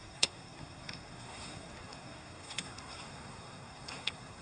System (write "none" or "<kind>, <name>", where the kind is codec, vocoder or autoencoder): codec, SNAC